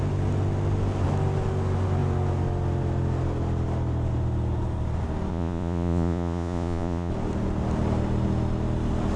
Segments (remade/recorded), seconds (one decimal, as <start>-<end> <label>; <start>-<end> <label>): 0.0-5.3 recorded; 5.3-7.1 remade; 7.1-9.2 recorded